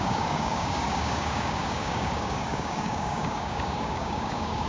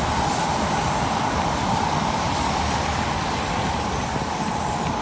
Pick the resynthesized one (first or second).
first